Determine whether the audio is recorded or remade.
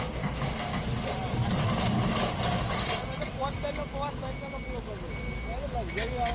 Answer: recorded